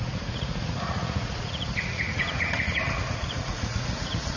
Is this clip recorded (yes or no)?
no